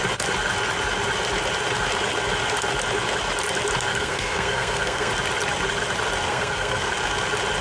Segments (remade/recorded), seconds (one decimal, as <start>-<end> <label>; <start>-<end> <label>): 0.0-3.9 recorded; 3.9-5.1 remade; 5.1-6.3 recorded; 6.3-6.9 remade; 6.9-7.6 recorded

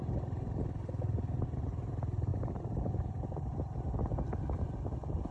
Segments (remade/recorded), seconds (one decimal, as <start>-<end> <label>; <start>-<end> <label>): 0.0-5.3 recorded

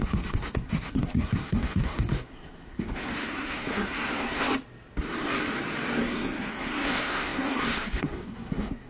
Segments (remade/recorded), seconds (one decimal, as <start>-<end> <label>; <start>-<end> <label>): 0.0-4.5 remade; 4.5-6.0 recorded; 6.0-8.9 remade